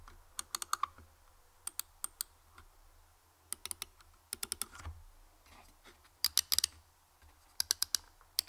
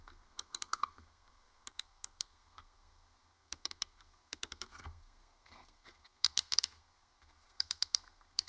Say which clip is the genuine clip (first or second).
first